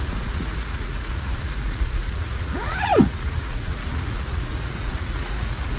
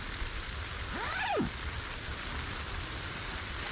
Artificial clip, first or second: first